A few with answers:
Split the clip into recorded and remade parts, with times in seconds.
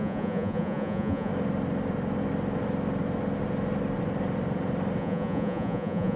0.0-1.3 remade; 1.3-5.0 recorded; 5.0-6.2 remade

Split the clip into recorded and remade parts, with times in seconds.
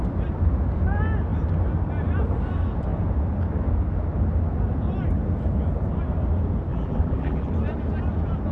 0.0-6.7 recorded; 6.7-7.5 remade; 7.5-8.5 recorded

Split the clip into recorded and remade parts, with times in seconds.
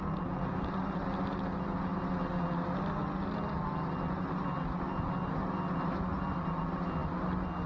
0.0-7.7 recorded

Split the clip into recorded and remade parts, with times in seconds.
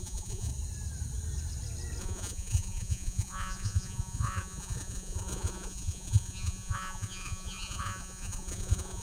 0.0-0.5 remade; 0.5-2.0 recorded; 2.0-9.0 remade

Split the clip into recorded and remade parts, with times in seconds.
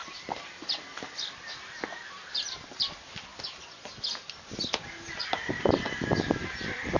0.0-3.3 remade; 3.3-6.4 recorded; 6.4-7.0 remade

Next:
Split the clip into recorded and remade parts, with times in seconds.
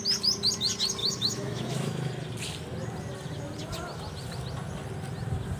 0.0-1.0 recorded; 1.0-2.1 remade; 2.1-5.6 recorded